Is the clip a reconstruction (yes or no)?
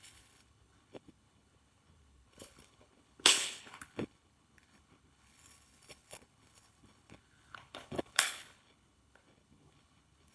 yes